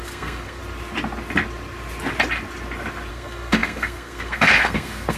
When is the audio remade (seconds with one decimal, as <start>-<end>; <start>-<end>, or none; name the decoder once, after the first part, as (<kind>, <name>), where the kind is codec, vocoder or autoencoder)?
0.0-0.6 (codec, SNAC); 3.1-5.2